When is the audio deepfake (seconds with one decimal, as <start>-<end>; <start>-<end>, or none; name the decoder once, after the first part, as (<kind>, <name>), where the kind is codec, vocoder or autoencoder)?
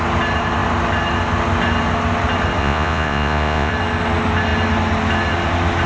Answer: 2.6-3.7 (vocoder, Vocos)